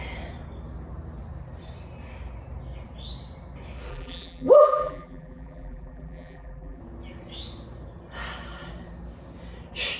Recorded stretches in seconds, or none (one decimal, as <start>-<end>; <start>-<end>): 0.0-3.9; 6.8-10.0